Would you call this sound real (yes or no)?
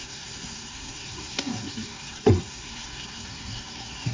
no